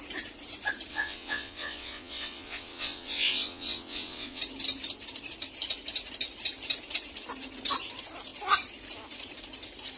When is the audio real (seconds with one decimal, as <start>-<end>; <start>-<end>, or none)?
0.0-0.9; 4.4-10.0